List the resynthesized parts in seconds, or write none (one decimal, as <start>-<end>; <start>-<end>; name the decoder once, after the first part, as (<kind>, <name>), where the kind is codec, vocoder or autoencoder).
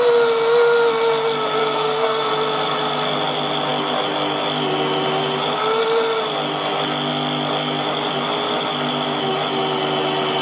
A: 1.6-2.3 (codec, SNAC)